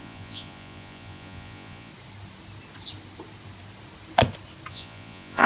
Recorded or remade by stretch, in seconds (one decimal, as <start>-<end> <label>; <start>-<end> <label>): 0.0-1.9 remade; 1.9-4.7 recorded; 4.7-5.5 remade

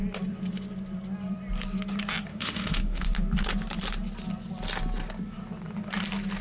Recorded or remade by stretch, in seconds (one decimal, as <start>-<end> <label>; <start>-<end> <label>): 0.0-2.3 recorded; 2.3-3.0 remade; 3.0-6.4 recorded